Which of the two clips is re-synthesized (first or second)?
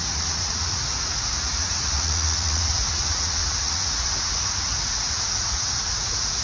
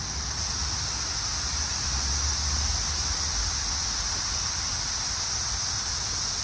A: first